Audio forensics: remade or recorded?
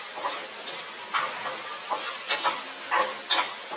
recorded